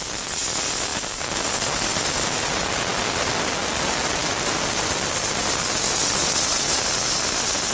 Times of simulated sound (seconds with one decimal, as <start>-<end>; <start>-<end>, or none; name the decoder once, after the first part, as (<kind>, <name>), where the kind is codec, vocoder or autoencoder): none